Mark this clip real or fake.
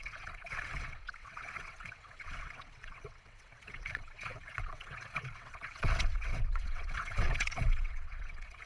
fake